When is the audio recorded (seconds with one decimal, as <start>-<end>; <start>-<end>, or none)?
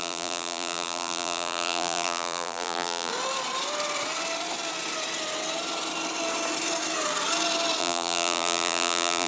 3.1-7.8